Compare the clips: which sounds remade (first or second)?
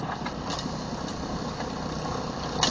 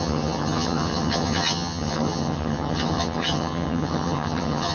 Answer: second